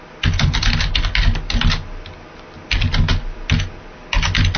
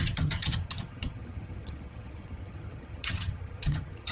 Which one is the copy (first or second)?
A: second